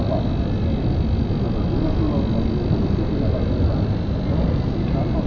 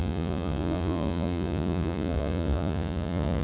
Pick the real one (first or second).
first